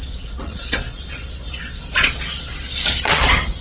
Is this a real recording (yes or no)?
no